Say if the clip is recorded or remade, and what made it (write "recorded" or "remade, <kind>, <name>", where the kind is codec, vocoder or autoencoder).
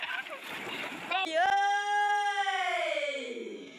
recorded